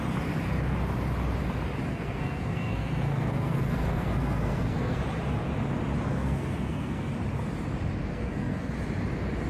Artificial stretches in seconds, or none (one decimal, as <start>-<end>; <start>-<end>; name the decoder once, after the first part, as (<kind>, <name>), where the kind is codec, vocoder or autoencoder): 1.9-5.0 (codec, SNAC); 6.1-7.1; 8.1-8.7